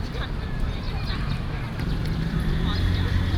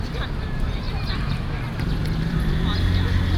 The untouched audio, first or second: second